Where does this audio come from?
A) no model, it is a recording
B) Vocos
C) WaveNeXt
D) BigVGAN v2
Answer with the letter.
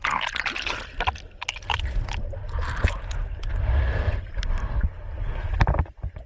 A